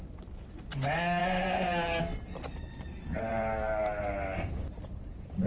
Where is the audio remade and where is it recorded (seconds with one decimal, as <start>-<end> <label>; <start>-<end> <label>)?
0.0-1.2 recorded; 1.2-2.0 remade; 2.0-3.3 recorded; 3.3-4.5 remade; 4.5-5.5 recorded